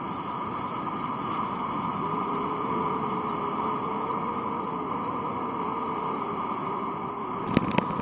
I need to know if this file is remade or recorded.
recorded